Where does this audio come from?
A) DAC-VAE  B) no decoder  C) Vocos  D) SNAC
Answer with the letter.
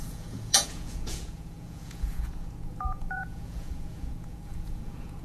C